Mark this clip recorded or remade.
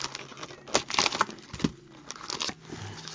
recorded